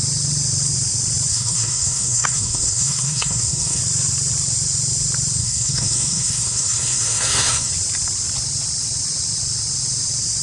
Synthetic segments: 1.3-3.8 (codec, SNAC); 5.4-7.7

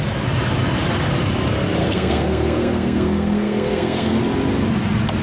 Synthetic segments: 1.8-4.2 (codec, SNAC)

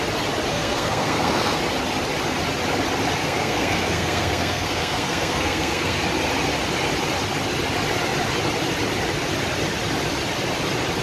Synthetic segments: 0.5-1.6 (codec, SNAC); 3.2-6.0

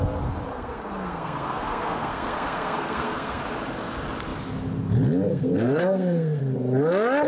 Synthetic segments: 0.5-3.4 (codec, SNAC); 5.3-6.4

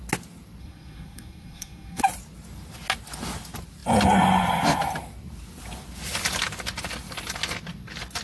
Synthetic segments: 0.6-2.0 (codec, SNAC)

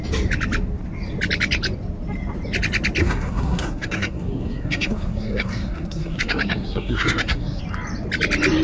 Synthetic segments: 3.0-7.6 (codec, SNAC)

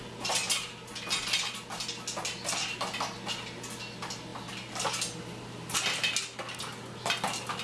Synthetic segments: none